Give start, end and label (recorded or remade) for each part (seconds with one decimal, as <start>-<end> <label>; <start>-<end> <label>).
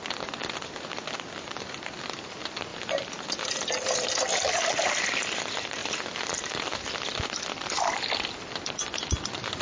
0.0-9.6 recorded